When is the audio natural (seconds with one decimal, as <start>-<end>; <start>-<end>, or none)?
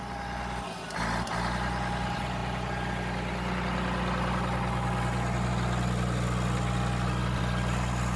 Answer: 0.0-8.2